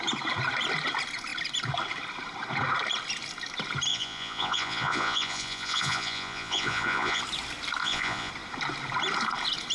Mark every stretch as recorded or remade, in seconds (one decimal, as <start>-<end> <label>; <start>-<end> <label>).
0.0-3.9 recorded; 3.9-7.2 remade; 7.2-7.8 recorded; 7.8-8.3 remade; 8.3-9.7 recorded